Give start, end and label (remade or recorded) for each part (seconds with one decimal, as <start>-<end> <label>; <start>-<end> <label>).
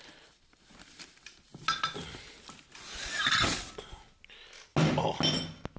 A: 0.0-5.8 recorded